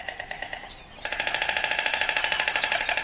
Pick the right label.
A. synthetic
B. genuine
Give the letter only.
B